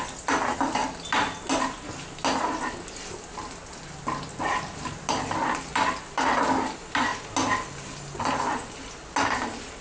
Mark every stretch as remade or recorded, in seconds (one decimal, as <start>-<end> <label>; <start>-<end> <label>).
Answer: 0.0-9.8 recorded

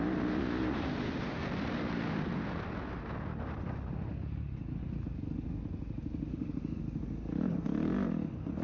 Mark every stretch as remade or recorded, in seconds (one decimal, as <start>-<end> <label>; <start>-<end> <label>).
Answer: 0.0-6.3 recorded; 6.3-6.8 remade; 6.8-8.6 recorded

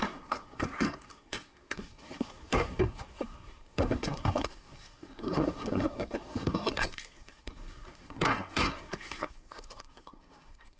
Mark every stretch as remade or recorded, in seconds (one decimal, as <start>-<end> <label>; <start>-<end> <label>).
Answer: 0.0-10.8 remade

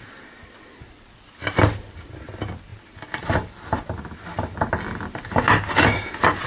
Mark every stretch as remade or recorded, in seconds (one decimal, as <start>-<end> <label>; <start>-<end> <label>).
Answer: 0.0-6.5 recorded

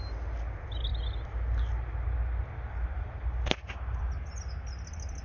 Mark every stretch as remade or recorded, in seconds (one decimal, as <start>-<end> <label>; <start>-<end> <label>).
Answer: 0.0-5.2 recorded

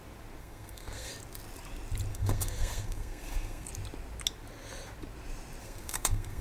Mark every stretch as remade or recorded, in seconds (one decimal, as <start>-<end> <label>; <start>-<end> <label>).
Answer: 0.0-0.4 recorded; 0.4-1.1 remade; 1.1-2.1 recorded; 2.1-3.7 remade; 3.7-5.6 recorded; 5.6-6.4 remade

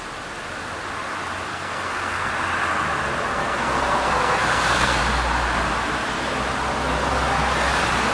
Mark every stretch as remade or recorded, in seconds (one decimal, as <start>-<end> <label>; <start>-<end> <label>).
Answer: 0.0-1.5 recorded; 1.5-2.3 remade; 2.3-3.3 recorded; 3.3-5.0 remade; 5.0-8.1 recorded